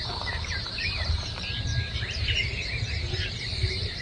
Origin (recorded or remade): remade